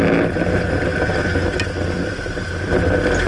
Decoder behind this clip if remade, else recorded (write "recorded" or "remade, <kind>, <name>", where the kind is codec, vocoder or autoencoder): recorded